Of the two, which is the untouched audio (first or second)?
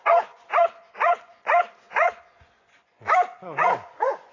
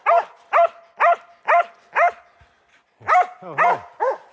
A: second